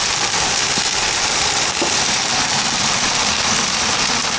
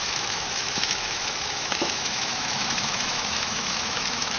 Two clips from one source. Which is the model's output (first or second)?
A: second